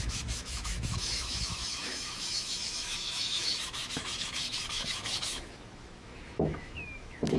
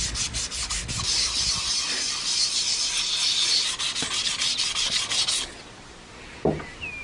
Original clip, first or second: second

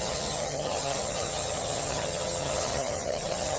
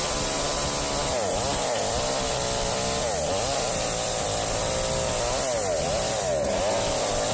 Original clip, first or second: second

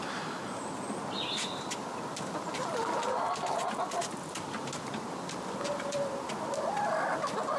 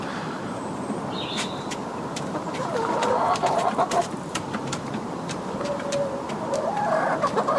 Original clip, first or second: first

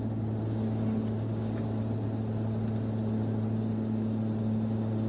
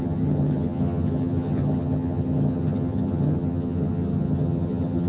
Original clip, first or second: first